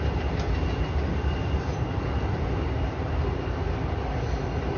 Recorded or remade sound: recorded